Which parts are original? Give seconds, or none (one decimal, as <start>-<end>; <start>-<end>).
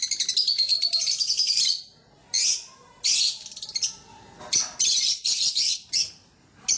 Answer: 0.0-0.7; 1.8-6.8